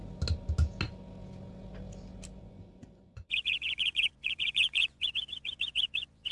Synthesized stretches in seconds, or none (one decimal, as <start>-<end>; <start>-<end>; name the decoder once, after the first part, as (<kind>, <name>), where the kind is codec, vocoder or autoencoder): 2.4-6.3 (vocoder, Vocos)